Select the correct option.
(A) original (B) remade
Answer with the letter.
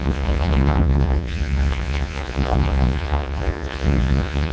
B